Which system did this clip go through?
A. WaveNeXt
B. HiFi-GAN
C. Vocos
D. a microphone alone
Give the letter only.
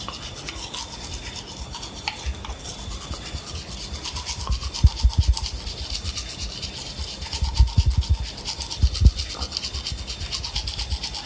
D